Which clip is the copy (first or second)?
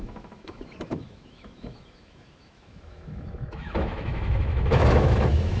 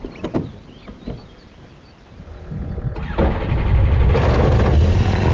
first